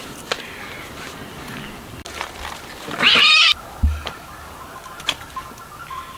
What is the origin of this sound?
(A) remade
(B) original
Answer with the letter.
B